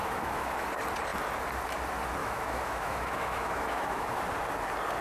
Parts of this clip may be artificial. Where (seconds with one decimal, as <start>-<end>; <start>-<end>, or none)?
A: 0.0-0.7; 2.2-4.2